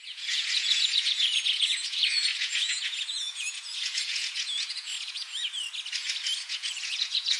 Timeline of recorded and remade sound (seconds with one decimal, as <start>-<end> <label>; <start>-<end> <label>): 0.0-5.4 remade; 5.4-6.4 recorded; 6.4-7.4 remade